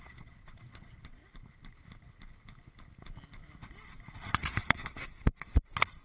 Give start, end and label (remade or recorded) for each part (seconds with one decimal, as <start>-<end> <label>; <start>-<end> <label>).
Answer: 0.0-1.2 remade; 1.2-4.2 recorded; 4.2-6.0 remade